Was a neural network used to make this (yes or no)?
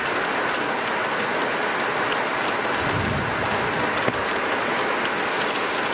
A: no